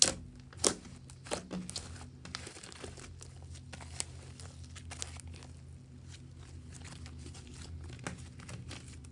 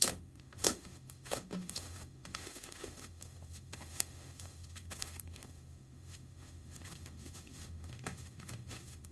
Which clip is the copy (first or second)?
second